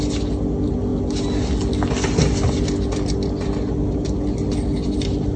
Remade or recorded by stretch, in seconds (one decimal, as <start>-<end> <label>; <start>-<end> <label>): 0.0-5.4 recorded